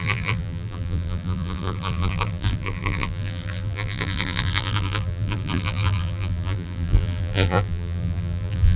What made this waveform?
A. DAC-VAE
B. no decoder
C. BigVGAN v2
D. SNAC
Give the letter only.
C